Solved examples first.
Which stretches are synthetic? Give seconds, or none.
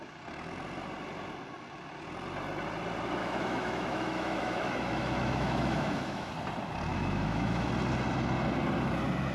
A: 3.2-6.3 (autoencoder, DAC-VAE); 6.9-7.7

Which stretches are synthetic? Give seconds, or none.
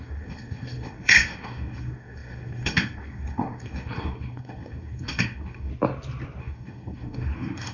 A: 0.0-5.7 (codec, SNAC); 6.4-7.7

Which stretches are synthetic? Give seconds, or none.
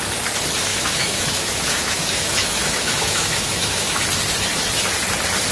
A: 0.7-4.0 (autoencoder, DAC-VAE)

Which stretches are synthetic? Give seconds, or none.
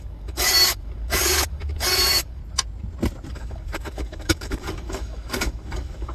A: 0.0-2.4 (codec, DAC); 3.3-6.1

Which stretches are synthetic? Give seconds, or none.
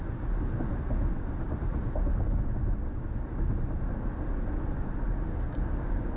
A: 5.3-6.2 (codec, DAC)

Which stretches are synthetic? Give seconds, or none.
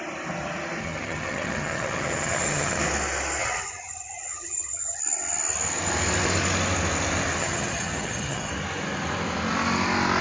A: 0.8-2.8 (vocoder, HiFi-GAN); 3.4-5.0; 7.4-8.5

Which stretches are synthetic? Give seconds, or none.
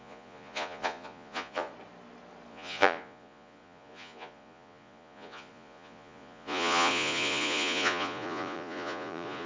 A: 0.0-1.7 (vocoder, Vocos); 2.5-9.5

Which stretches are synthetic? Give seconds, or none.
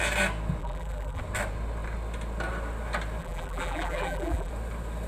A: 0.6-1.2 (vocoder, BigVGAN v2); 3.2-4.5